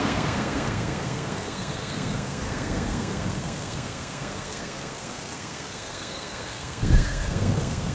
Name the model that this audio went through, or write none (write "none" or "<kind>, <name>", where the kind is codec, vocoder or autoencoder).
codec, SNAC